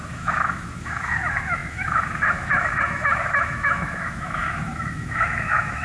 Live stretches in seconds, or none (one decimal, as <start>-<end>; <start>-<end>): none